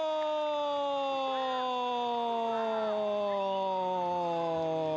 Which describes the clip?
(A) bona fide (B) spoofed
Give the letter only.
A